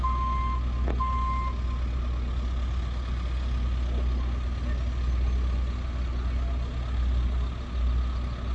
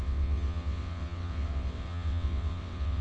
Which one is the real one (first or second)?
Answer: first